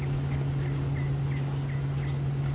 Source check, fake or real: real